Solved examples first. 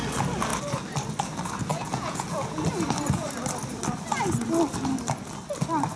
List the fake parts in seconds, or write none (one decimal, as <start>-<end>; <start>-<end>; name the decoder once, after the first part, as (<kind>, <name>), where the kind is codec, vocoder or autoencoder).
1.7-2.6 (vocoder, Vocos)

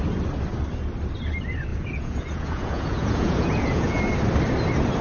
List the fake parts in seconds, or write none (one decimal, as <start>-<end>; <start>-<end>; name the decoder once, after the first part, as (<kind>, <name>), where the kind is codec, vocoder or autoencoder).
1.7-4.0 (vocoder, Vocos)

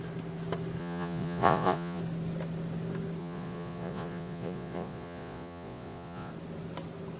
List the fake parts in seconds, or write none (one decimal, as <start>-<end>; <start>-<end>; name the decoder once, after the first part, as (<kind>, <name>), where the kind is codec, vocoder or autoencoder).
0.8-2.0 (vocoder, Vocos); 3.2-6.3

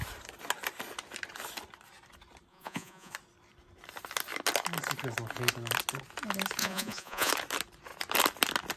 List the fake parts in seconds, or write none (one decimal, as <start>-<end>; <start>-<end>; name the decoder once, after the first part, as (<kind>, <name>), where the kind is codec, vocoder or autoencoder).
2.5-3.1 (vocoder, Vocos); 6.6-7.3

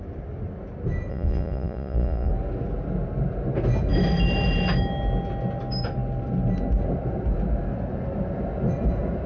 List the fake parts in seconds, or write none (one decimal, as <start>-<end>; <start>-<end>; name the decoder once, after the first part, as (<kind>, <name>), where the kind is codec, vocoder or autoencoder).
1.1-2.3 (vocoder, Vocos)

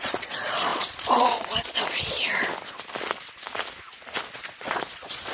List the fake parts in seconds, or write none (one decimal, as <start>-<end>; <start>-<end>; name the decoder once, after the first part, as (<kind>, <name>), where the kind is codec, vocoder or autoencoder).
0.0-2.5 (vocoder, Vocos); 4.5-5.3